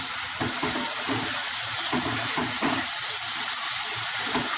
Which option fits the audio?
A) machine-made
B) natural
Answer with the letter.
B